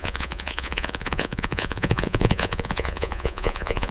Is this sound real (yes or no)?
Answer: no